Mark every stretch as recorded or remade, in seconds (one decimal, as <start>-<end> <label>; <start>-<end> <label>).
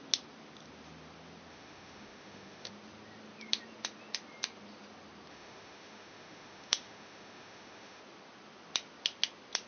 0.0-1.5 recorded; 1.5-2.7 remade; 2.7-5.3 recorded; 5.3-8.0 remade; 8.0-9.7 recorded